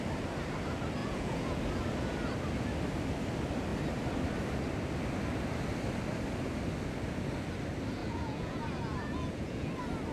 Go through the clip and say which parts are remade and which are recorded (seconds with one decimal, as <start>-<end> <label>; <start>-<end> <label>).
0.0-1.0 recorded; 1.0-1.6 remade; 1.6-8.0 recorded; 8.0-9.7 remade; 9.7-10.1 recorded